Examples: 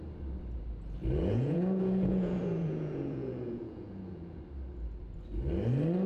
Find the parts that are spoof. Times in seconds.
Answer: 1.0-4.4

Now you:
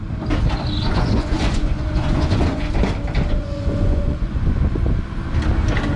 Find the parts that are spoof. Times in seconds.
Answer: 0.8-2.8; 3.3-4.7

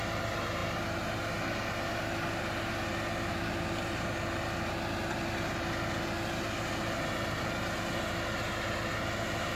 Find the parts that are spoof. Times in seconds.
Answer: none

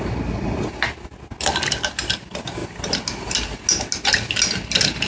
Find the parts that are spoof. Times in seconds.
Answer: none

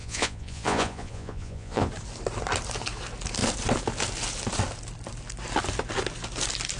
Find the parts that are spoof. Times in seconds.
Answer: 0.0-1.9